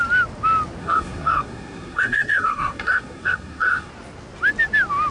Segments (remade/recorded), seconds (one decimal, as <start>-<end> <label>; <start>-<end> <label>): 0.0-0.8 recorded; 0.8-3.9 remade; 3.9-5.1 recorded